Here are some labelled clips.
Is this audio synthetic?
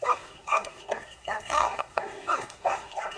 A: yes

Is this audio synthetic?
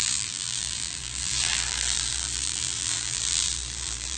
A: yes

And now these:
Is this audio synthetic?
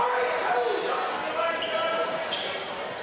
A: no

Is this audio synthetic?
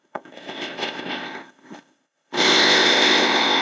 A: yes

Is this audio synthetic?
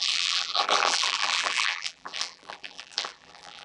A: yes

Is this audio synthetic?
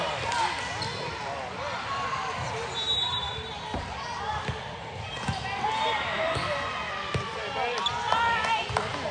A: no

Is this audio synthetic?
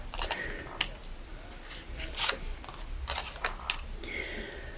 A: no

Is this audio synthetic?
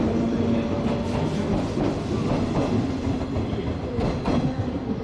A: no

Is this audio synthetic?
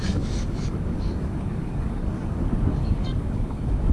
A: yes